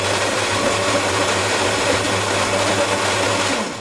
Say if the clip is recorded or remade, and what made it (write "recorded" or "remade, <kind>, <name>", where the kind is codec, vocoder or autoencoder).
recorded